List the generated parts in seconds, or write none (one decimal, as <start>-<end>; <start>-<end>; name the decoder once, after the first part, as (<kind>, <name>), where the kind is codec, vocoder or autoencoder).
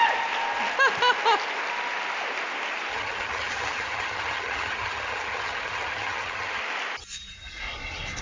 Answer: 2.9-6.6 (vocoder, HiFi-GAN)